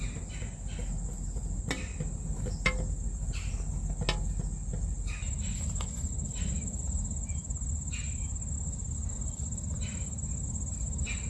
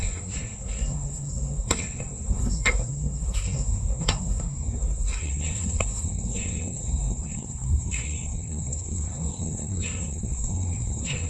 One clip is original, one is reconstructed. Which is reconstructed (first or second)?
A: second